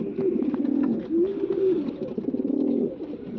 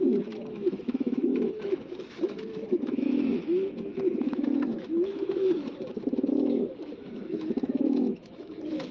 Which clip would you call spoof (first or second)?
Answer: second